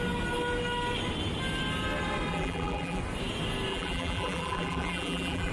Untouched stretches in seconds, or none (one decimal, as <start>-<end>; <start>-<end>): 0.0-2.3; 3.0-3.7